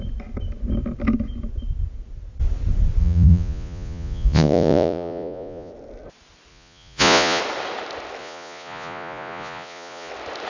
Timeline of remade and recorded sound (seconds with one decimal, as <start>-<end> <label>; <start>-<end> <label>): 0.0-3.0 recorded; 3.0-5.7 remade; 5.7-6.5 recorded; 6.5-7.4 remade; 7.4-8.2 recorded; 8.2-10.1 remade; 10.1-10.5 recorded